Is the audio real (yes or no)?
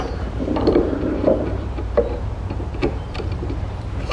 no